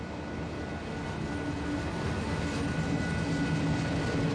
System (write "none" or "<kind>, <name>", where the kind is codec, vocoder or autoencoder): none